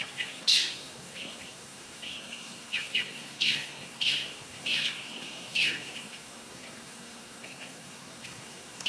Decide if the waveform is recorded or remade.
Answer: remade